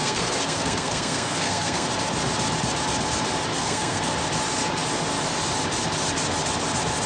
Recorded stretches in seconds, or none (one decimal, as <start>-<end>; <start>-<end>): 1.9-3.5; 4.1-7.1